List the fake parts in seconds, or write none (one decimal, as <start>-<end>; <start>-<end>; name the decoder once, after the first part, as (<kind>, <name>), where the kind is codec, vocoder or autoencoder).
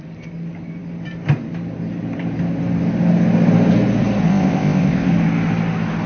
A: 4.3-5.1 (codec, ZipCodec)